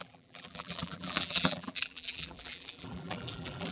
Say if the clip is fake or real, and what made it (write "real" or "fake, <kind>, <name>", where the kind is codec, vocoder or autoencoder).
fake, vocoder, BigVGAN v2